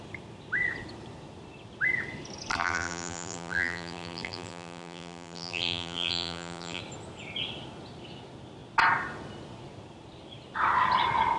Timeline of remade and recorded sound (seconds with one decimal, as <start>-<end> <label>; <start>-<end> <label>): 0.0-2.5 recorded; 2.5-6.8 remade; 6.8-11.4 recorded